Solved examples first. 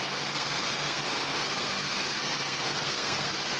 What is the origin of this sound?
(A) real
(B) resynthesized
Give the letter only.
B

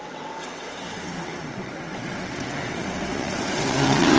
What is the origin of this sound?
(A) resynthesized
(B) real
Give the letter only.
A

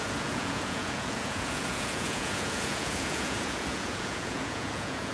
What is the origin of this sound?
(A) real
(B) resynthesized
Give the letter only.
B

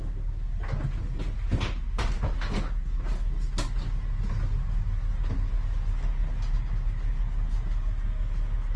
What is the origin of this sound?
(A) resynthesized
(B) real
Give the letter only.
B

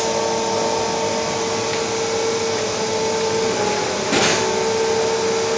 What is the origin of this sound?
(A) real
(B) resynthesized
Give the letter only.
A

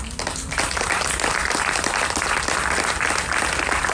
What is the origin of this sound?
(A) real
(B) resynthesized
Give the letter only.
A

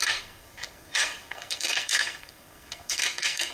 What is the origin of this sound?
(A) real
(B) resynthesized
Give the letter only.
B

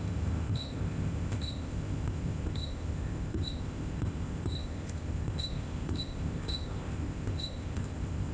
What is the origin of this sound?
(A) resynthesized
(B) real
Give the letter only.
A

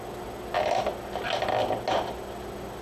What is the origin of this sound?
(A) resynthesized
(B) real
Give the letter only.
B